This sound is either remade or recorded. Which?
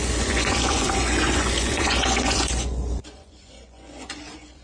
remade